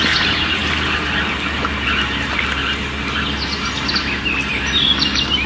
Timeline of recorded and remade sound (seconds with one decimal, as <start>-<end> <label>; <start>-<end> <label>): 0.0-5.5 recorded